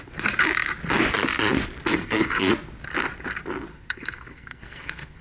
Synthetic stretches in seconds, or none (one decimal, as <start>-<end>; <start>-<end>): 1.9-2.5; 3.7-5.2